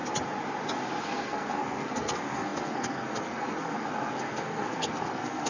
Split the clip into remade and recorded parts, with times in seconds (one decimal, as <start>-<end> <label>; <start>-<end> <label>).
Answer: 0.0-1.0 recorded; 1.0-5.5 remade